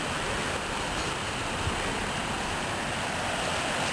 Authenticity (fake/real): real